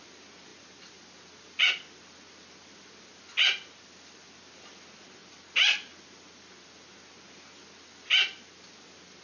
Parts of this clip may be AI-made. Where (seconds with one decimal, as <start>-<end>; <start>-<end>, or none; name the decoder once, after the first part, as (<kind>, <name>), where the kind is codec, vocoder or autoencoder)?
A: none